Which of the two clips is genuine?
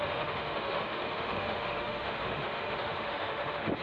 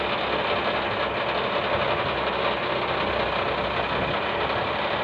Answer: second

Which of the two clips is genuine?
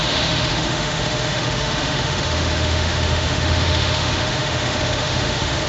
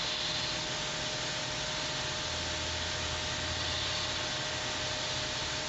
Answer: second